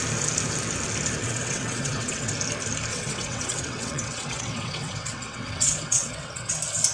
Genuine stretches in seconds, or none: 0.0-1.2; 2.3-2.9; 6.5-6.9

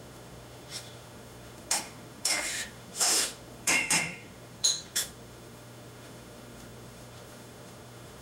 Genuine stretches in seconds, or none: none

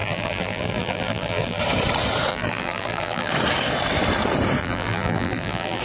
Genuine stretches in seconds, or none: 1.6-2.3; 3.3-4.6

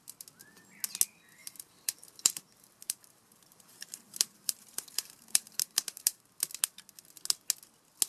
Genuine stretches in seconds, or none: 0.0-1.4; 6.3-8.1

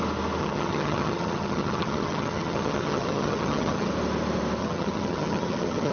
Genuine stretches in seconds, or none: 0.0-0.4; 3.9-4.6